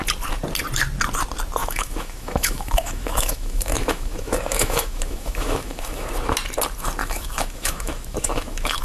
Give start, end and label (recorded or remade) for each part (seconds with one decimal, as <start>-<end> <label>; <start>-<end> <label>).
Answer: 0.0-1.6 recorded; 1.6-6.1 remade; 6.1-7.0 recorded; 7.0-8.8 remade